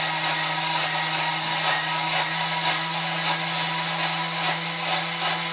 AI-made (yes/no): no